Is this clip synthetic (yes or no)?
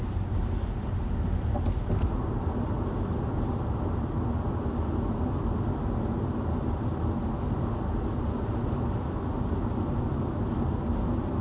no